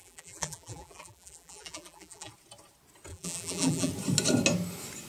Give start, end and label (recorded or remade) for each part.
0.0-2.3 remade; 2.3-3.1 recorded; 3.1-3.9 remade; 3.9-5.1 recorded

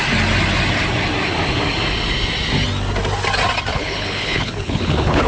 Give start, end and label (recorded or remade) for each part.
0.0-3.7 recorded; 3.7-5.3 remade